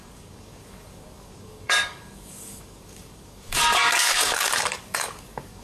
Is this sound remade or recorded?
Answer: remade